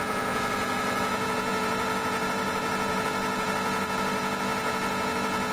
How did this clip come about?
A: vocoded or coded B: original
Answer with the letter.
A